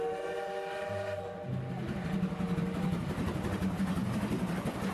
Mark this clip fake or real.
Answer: real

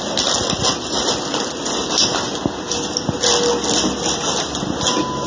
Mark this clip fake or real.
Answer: real